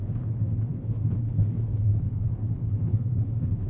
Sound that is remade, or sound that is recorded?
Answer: remade